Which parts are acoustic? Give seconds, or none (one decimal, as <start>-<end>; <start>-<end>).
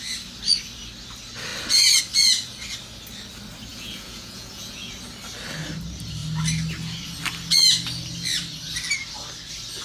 0.0-3.7; 4.9-9.8